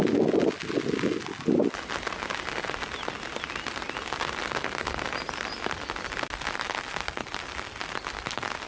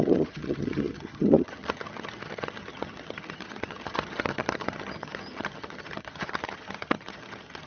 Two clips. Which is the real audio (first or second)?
first